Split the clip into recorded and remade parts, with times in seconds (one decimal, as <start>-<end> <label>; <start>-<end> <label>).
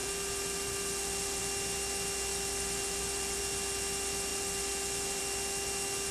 0.0-1.4 remade; 1.4-2.3 recorded; 2.3-3.4 remade; 3.4-4.3 recorded; 4.3-5.2 remade; 5.2-6.1 recorded